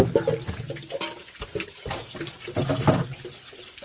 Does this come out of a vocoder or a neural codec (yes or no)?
no